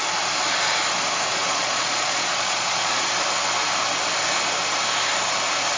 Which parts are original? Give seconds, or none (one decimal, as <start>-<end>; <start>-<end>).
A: 0.0-1.3; 3.1-5.8